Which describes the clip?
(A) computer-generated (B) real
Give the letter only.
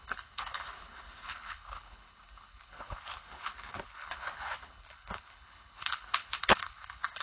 A